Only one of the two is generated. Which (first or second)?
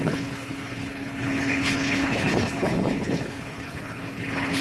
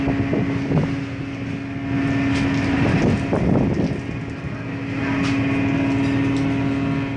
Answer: first